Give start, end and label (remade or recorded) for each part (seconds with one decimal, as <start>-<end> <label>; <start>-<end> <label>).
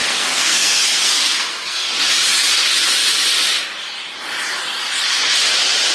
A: 0.0-1.9 remade; 1.9-5.9 recorded